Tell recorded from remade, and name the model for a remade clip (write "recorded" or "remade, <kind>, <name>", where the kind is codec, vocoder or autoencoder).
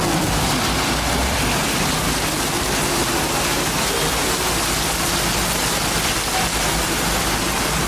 recorded